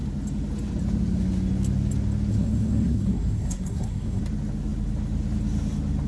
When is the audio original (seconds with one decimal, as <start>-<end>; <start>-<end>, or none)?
0.0-2.3; 4.2-6.1